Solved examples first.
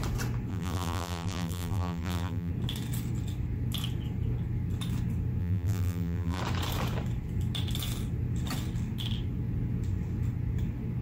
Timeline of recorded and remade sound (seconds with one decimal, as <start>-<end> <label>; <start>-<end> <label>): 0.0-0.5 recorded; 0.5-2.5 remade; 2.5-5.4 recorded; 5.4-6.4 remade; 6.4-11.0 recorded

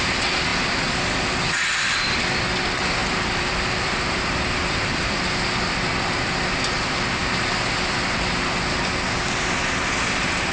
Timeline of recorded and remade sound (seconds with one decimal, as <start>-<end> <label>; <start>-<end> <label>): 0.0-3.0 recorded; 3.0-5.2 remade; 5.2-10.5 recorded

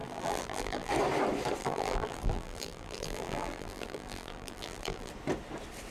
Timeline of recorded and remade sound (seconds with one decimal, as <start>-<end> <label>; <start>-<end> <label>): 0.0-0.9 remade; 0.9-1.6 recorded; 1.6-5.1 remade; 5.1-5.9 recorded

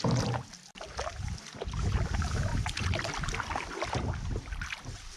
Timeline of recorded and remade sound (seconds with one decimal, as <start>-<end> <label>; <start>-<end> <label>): 0.0-5.2 recorded